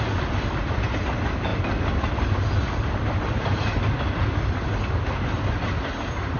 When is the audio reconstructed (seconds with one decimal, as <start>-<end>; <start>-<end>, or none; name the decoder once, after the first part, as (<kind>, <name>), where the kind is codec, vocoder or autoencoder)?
none